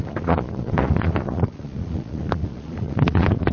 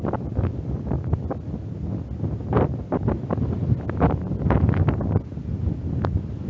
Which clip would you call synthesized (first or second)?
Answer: first